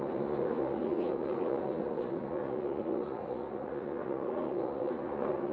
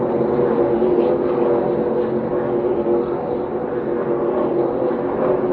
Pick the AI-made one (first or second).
first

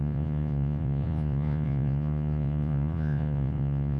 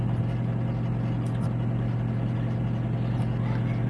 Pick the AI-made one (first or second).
first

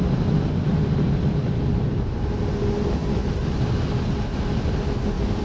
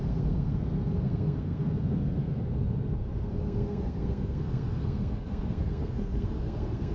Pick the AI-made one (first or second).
second